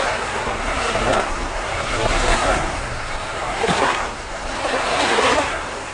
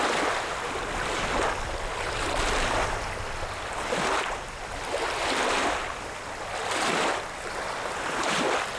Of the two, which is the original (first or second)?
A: second